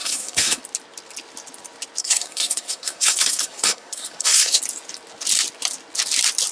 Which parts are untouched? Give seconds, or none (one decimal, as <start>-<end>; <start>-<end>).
0.6-2.0; 4.6-6.5